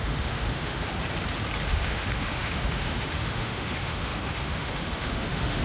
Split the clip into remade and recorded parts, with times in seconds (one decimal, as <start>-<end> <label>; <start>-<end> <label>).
0.0-0.9 remade; 0.9-1.7 recorded; 1.7-5.6 remade